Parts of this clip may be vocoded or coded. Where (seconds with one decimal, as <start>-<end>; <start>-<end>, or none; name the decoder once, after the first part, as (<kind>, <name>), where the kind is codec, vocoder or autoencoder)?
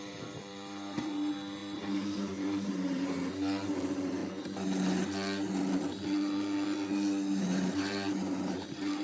0.0-4.2 (vocoder, BigVGAN v2); 7.4-9.0